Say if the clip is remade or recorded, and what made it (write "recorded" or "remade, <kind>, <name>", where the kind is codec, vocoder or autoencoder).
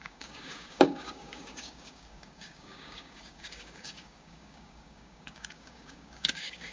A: remade, codec, DAC